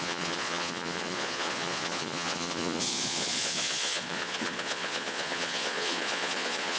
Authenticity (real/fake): fake